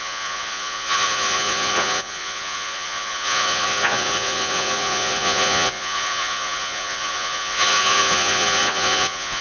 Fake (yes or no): yes